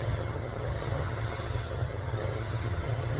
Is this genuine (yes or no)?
no